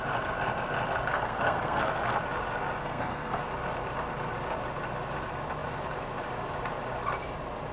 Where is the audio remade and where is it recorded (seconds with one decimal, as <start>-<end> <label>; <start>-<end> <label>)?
0.0-1.1 recorded; 1.1-1.8 remade; 1.8-2.8 recorded; 2.8-3.4 remade; 3.4-7.7 recorded